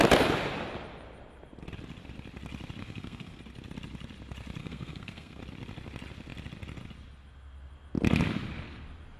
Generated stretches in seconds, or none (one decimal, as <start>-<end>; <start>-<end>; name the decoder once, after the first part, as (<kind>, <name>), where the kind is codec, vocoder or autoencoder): 2.8-3.4 (codec, SNAC); 4.6-5.4